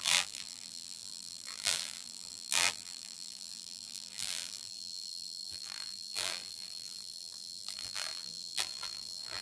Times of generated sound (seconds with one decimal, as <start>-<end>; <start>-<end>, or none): 0.0-9.4